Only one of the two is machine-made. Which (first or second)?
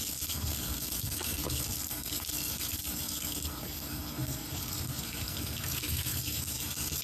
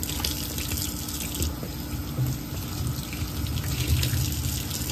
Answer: first